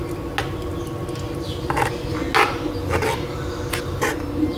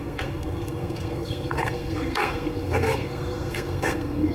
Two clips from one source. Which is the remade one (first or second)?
second